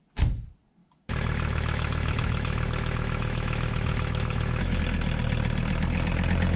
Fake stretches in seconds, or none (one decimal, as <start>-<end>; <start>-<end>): 0.8-4.8